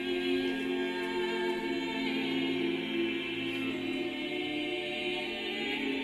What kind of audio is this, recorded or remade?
recorded